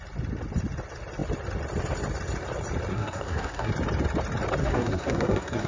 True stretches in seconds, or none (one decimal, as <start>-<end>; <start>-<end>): 0.0-2.9; 3.7-4.6